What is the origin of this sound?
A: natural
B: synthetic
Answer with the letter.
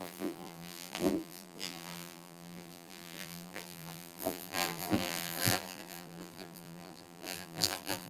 B